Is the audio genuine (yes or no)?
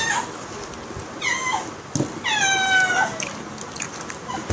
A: yes